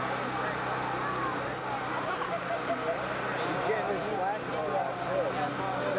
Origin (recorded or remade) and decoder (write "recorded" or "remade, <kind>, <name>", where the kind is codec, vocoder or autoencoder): recorded